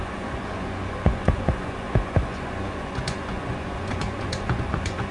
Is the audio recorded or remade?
remade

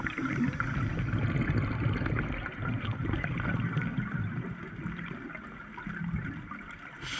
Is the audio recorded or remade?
recorded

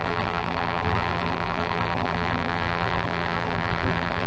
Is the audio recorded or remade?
remade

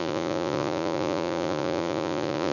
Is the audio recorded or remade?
remade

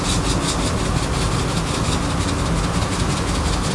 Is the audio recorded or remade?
recorded